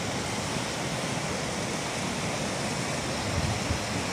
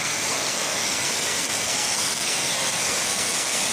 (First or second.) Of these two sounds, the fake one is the second